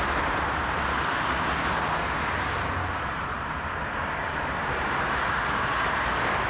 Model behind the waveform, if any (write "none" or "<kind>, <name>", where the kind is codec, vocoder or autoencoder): none